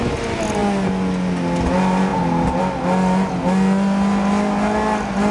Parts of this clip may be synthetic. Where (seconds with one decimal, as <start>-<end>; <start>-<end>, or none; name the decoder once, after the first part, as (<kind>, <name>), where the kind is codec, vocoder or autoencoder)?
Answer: none

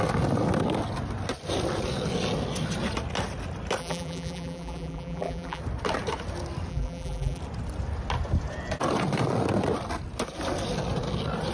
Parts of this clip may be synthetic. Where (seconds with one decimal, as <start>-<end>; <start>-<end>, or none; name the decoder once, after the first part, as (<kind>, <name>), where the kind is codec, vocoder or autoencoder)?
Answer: 3.8-5.6 (vocoder, BigVGAN v2); 6.7-7.4